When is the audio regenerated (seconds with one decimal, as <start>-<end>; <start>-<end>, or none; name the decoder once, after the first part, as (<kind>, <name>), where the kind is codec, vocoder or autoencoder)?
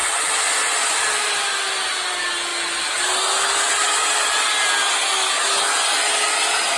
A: none